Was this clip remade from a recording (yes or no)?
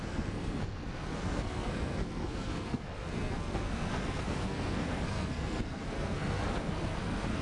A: yes